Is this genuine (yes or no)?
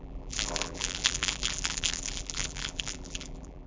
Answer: no